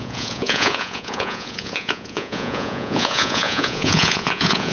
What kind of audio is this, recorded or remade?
remade